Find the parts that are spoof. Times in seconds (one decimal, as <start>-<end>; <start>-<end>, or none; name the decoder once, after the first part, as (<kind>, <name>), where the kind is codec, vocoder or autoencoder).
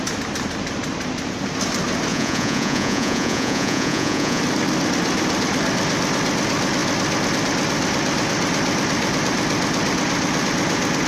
2.1-4.4 (vocoder, Vocos)